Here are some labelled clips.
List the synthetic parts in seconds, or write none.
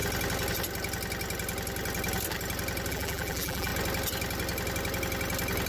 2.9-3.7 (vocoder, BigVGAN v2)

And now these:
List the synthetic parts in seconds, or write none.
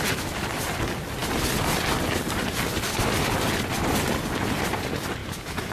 5.2-5.7 (vocoder, BigVGAN v2)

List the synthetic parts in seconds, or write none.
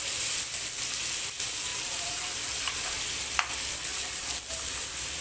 1.7-3.3 (vocoder, BigVGAN v2); 3.9-5.2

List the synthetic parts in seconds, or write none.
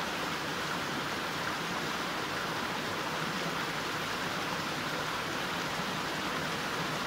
0.5-1.4 (vocoder, BigVGAN v2)